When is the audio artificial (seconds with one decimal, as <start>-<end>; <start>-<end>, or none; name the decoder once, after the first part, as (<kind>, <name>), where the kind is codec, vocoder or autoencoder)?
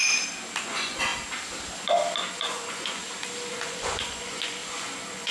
0.6-1.1 (vocoder, Vocos); 2.3-3.0; 3.5-5.3